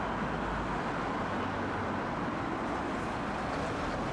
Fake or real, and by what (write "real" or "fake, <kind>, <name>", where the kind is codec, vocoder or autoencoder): real